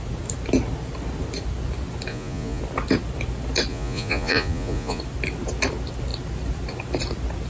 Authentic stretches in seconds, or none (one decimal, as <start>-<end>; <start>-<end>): 0.0-2.1; 2.6-3.7; 5.0-7.5